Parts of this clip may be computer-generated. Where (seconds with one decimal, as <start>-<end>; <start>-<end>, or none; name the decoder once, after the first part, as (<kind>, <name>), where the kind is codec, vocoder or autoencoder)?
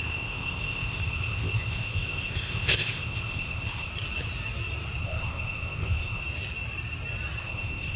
0.0-3.9 (codec, ZipCodec); 5.0-6.2; 7.4-8.0